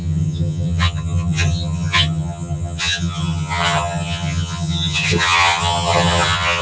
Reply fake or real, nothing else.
fake